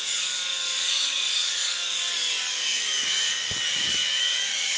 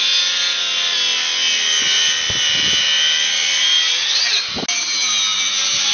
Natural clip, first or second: second